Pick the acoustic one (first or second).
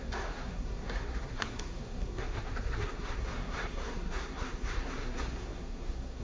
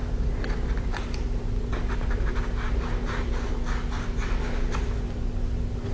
second